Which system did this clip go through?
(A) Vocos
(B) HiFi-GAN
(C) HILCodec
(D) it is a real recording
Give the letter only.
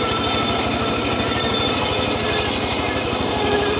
D